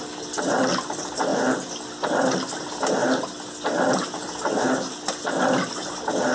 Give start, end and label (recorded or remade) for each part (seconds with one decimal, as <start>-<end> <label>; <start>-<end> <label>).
0.0-6.3 recorded

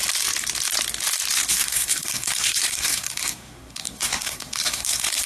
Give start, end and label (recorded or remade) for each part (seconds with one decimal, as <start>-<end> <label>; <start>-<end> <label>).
0.0-1.5 recorded; 1.5-5.3 remade

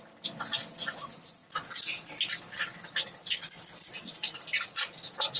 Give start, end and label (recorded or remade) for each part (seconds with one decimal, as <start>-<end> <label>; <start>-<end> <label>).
0.0-5.4 recorded

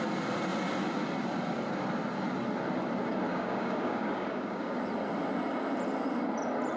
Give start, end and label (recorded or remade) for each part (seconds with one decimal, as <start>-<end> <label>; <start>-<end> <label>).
0.0-3.3 recorded; 3.3-4.8 remade; 4.8-6.8 recorded